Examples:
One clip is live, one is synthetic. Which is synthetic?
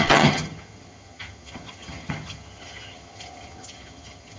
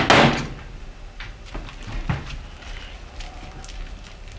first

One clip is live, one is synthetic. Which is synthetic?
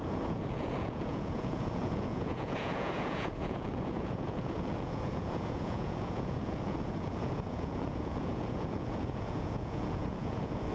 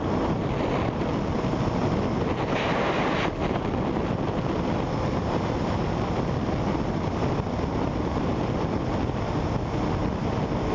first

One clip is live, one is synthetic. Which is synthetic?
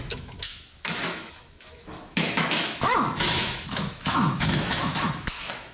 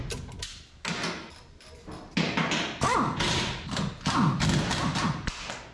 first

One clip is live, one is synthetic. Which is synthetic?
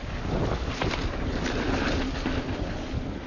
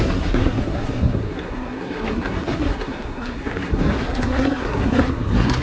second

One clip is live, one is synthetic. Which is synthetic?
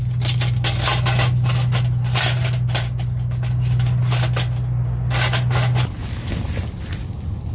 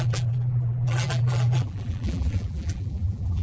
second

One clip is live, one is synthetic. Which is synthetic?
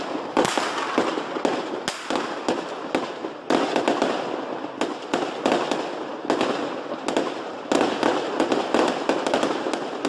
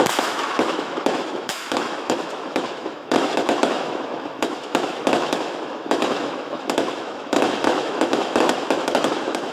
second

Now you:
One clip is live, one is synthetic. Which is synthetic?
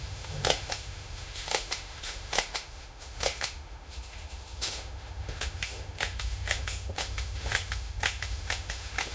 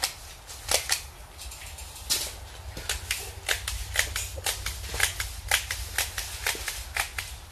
first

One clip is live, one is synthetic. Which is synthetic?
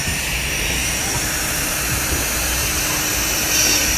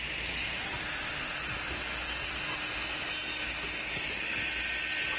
first